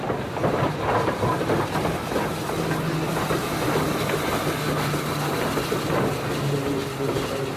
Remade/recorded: recorded